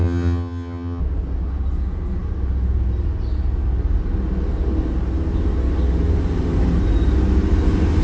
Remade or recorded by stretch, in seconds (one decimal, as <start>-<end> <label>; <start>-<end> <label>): 0.0-1.0 remade; 1.0-8.0 recorded

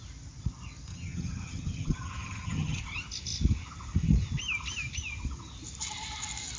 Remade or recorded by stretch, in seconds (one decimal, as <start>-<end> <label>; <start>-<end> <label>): 0.0-0.9 recorded; 0.9-2.8 remade; 2.8-6.6 recorded

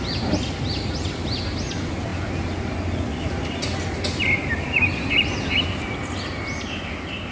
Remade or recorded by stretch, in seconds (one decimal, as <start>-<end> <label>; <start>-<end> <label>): 0.0-7.3 recorded

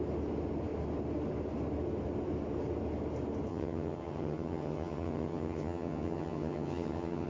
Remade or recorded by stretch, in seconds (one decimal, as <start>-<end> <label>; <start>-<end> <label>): 0.0-3.5 recorded; 3.5-7.3 remade